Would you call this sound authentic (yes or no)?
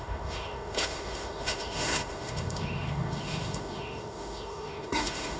no